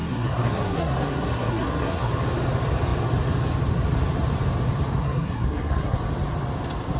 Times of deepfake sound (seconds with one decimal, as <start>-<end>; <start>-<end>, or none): 0.0-2.1; 5.0-6.0